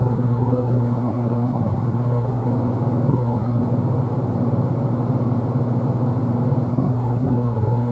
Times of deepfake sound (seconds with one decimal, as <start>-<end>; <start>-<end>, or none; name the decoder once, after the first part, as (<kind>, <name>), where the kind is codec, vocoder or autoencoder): 0.0-2.5 (codec, SNAC); 3.1-3.6; 6.7-7.9